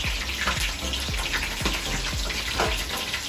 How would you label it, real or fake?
real